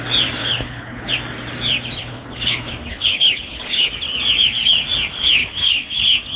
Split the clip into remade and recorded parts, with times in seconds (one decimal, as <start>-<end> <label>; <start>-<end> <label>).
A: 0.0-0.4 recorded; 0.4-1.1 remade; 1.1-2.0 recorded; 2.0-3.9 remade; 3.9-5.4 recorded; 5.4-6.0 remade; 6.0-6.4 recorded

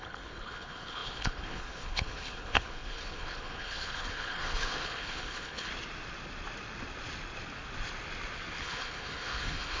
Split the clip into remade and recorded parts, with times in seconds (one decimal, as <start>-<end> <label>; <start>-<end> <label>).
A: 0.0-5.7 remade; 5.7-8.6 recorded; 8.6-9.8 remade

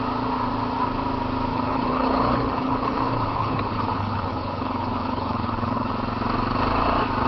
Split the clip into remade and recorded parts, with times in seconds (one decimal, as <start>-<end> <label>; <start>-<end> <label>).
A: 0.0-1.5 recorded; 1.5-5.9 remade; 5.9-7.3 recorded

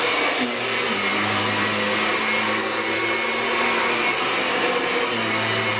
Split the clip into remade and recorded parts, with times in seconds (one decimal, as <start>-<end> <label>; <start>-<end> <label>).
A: 0.0-5.8 recorded